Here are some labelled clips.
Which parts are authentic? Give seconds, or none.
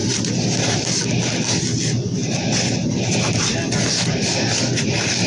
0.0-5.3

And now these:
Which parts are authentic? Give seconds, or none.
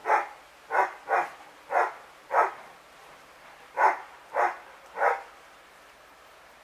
0.0-2.5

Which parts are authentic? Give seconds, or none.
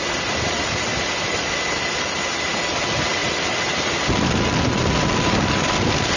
0.9-1.7; 3.2-5.0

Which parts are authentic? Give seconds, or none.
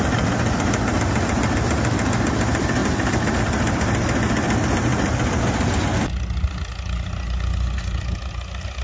0.0-2.8; 3.4-8.8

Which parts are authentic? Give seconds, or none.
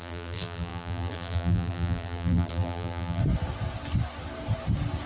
3.2-5.1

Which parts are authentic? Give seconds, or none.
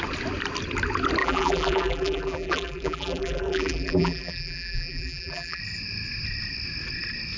0.0-1.2; 5.6-7.4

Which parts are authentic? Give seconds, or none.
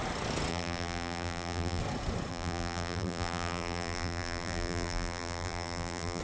0.0-0.5; 1.8-2.3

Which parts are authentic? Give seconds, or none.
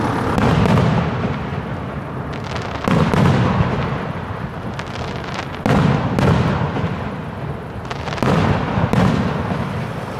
0.0-10.2